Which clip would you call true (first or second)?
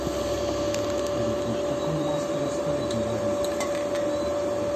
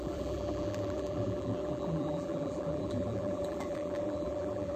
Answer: first